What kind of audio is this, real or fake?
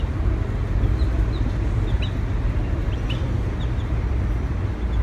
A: real